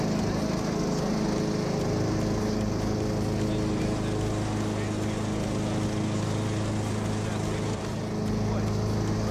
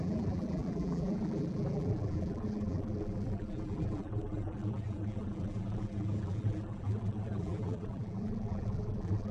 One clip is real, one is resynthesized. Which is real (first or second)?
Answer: first